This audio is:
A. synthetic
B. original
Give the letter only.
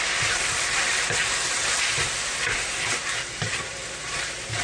A